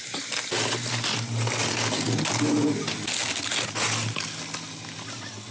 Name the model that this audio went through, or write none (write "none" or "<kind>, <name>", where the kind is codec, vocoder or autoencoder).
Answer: none